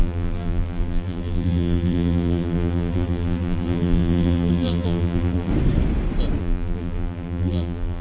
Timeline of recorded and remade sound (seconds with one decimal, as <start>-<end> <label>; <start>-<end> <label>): 0.0-5.5 remade; 5.5-6.4 recorded; 6.4-8.0 remade